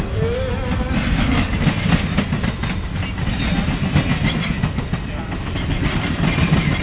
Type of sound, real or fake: real